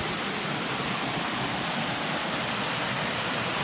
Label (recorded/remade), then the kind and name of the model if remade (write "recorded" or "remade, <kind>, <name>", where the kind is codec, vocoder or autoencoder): recorded